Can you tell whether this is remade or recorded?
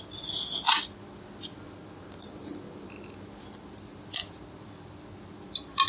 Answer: recorded